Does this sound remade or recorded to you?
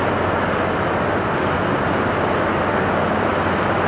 recorded